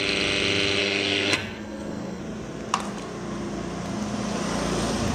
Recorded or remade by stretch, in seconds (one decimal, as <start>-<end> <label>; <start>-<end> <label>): 0.0-0.8 recorded; 0.8-2.2 remade; 2.2-5.1 recorded